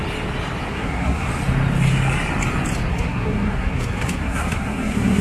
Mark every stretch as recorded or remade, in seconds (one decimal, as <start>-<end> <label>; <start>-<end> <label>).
0.0-0.7 recorded; 0.7-1.3 remade; 1.3-2.9 recorded; 2.9-5.2 remade